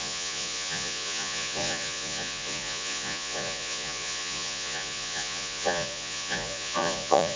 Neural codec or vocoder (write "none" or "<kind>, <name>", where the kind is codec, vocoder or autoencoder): vocoder, Vocos